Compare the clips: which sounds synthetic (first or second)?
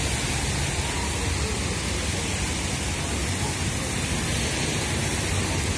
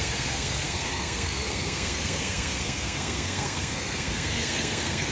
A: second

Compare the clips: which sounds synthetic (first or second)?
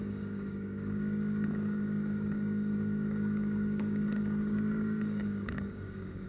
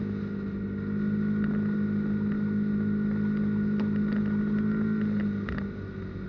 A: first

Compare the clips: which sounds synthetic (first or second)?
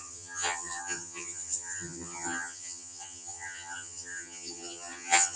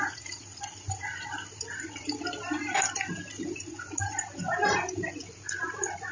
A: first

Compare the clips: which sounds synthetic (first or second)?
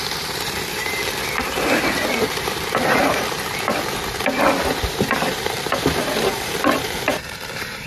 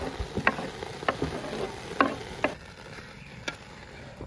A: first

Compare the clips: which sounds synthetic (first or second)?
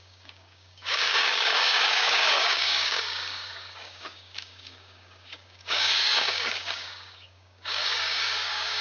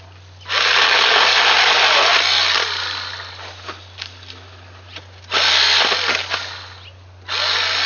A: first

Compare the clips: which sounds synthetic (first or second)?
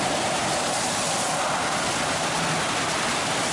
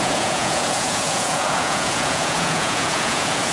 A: second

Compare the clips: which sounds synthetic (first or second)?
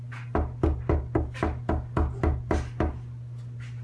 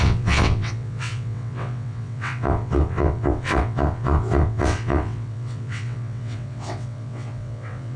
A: second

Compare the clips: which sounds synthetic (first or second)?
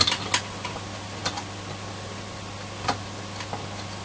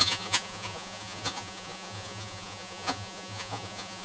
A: second